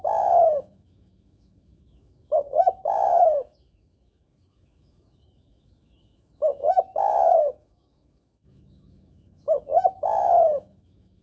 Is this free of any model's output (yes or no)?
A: no